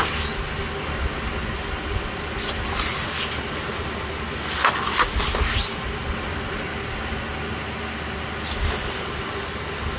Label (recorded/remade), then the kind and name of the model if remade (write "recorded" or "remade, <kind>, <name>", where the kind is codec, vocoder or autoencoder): recorded